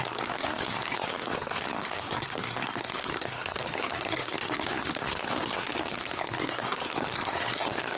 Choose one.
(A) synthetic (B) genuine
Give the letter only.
A